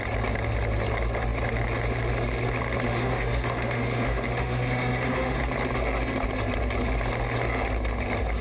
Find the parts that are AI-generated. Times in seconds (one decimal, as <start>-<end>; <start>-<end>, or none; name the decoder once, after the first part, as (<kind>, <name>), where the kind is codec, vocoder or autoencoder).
2.9-5.4 (autoencoder, DAC-VAE)